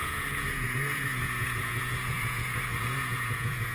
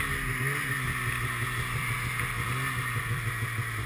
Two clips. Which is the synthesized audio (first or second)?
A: first